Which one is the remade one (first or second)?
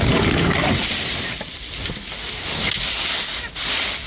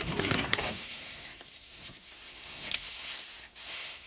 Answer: second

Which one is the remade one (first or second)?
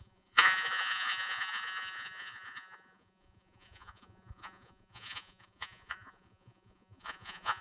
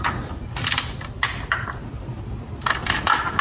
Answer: first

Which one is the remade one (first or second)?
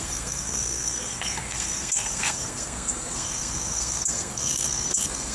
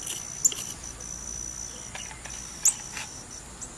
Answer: first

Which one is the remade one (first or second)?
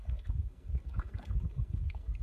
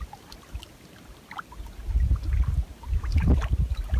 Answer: first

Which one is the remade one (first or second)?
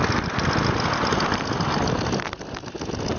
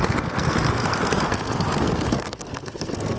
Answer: second